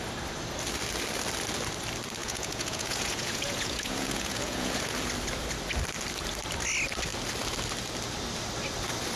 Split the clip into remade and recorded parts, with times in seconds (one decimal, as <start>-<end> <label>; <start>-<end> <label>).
0.0-2.2 recorded; 2.2-4.8 remade; 4.8-9.2 recorded